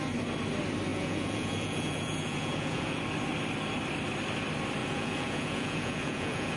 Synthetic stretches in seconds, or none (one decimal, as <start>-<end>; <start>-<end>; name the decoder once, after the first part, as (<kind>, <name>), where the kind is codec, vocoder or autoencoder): 0.9-3.0 (vocoder, Vocos); 4.8-6.6

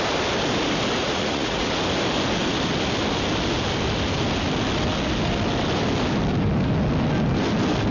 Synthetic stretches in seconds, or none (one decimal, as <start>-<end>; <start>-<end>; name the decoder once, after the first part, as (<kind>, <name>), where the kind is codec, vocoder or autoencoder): 1.0-1.7 (vocoder, Vocos)